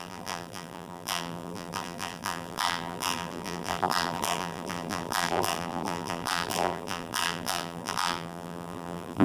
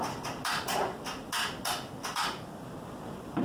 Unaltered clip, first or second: second